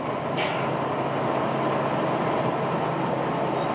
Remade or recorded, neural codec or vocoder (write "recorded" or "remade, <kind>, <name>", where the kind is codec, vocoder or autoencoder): recorded